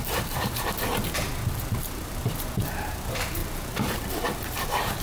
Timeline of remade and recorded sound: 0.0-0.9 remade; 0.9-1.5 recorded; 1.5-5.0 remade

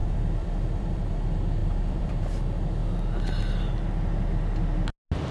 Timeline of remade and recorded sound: 0.0-1.1 remade; 1.1-1.6 recorded; 1.6-2.2 remade; 2.2-5.3 recorded

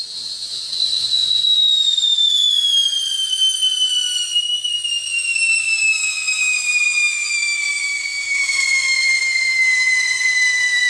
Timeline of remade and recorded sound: 0.0-7.2 recorded; 7.2-9.2 remade; 9.2-10.9 recorded

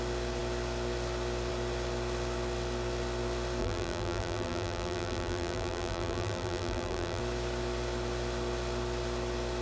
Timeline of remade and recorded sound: 0.0-3.6 recorded; 3.6-7.2 remade; 7.2-9.6 recorded

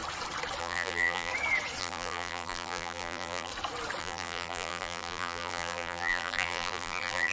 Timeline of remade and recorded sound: 0.0-0.6 recorded; 0.6-1.3 remade; 1.3-1.8 recorded; 1.8-3.5 remade; 3.5-4.0 recorded; 4.0-7.3 remade